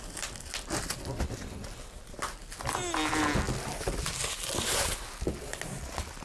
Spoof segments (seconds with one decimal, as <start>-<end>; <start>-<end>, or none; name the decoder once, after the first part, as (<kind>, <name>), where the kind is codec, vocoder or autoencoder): none